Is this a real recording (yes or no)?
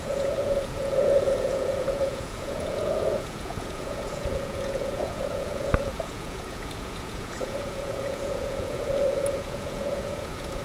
no